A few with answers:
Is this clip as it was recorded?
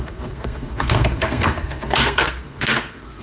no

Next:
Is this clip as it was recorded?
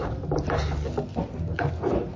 yes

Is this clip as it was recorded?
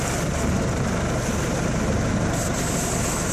yes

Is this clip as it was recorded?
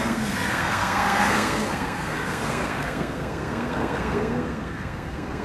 no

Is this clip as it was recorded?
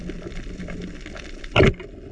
yes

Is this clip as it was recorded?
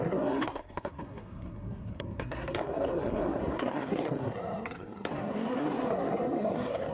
no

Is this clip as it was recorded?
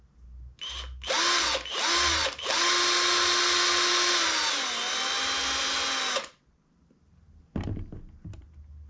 yes